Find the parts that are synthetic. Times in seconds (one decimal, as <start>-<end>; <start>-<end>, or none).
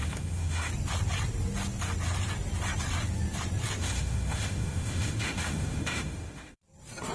0.0-0.7; 3.8-6.6